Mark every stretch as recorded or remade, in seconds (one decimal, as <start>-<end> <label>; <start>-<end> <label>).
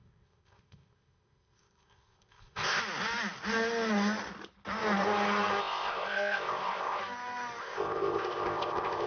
0.0-2.8 remade; 2.8-5.6 recorded; 5.6-7.0 remade; 7.0-7.6 recorded; 7.6-9.1 remade